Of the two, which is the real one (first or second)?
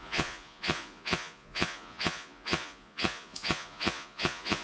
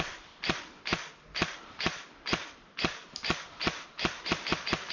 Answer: second